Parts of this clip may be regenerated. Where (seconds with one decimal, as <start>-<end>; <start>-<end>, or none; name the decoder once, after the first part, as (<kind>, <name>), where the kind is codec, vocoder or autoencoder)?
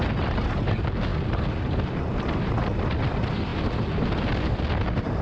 none